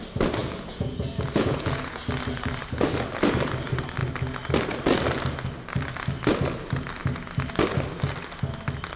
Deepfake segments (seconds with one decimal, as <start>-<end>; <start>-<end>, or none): 0.4-2.0